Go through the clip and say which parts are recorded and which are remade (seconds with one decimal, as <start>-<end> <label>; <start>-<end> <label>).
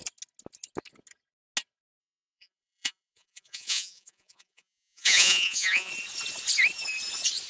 0.0-2.0 recorded; 2.0-5.9 remade; 5.9-7.5 recorded